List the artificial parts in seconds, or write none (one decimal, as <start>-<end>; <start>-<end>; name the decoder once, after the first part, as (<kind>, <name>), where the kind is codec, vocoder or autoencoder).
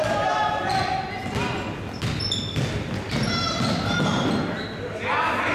none